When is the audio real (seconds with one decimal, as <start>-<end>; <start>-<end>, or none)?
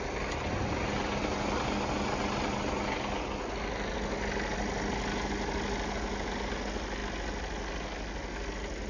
0.0-8.9